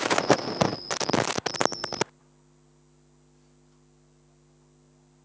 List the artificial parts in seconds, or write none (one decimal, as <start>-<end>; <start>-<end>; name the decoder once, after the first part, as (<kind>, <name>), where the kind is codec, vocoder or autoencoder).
none